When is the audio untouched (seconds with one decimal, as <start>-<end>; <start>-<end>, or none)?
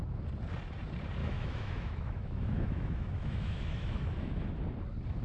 0.0-1.2; 4.3-5.2